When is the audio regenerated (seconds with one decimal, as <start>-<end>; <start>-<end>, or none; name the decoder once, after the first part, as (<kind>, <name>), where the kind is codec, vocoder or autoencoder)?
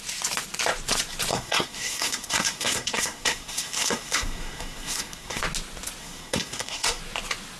1.3-5.4 (codec, SNAC); 6.0-7.0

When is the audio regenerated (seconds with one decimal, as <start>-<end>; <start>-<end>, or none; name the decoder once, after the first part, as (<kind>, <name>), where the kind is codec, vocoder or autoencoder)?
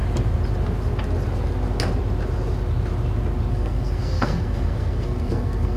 3.5-5.8 (codec, SNAC)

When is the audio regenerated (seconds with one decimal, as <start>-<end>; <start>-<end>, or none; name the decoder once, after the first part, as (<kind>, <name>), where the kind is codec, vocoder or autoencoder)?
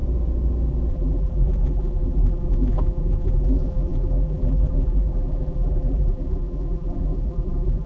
0.9-7.9 (vocoder, BigVGAN v2)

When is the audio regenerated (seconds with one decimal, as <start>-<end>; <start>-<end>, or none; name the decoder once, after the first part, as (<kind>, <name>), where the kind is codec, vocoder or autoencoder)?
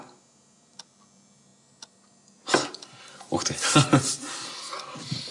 none